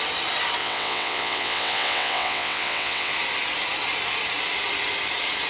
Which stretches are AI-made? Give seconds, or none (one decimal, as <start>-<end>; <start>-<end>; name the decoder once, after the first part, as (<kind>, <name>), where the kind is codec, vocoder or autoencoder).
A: 0.6-3.1 (vocoder, WaveNeXt)